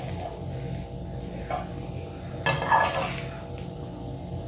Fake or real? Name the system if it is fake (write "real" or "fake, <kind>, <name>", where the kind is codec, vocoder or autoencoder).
real